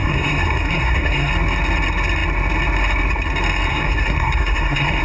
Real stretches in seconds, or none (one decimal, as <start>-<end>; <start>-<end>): 1.3-3.7